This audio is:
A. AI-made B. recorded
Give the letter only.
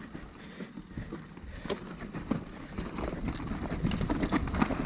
B